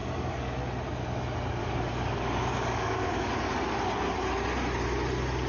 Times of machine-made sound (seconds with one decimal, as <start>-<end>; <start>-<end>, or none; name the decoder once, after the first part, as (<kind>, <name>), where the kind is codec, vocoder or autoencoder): 0.0-0.6 (codec, DAC); 1.6-3.3